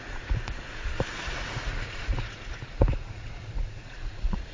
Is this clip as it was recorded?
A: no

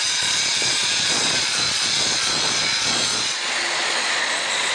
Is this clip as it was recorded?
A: no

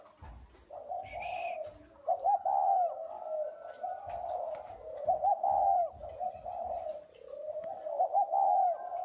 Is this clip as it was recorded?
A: yes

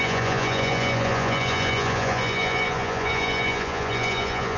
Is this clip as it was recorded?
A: no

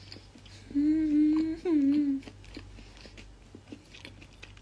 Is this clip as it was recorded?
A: yes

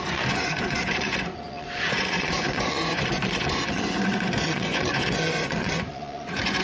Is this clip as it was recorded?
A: no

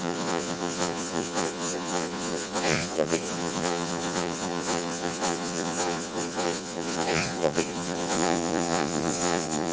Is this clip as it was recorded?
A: no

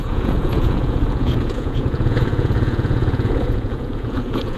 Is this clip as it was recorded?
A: no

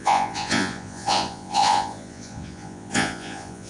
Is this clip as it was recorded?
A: no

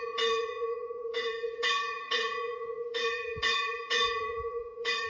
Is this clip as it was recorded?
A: no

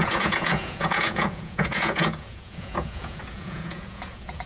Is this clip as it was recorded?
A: no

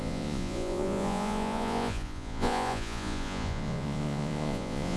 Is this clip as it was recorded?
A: no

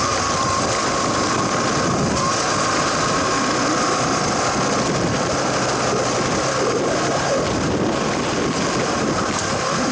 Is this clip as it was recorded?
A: yes